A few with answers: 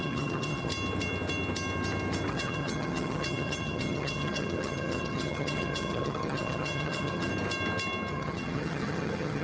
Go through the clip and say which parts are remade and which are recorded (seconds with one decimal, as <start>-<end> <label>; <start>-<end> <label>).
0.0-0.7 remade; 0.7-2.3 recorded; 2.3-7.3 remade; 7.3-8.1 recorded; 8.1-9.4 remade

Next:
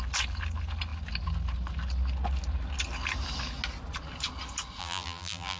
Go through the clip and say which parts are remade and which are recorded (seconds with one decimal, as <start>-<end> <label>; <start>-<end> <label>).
0.0-4.8 recorded; 4.8-5.6 remade

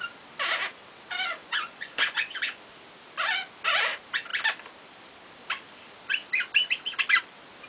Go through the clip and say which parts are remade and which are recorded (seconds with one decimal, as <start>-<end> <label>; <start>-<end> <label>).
0.0-1.4 recorded; 1.4-2.6 remade; 2.6-7.7 recorded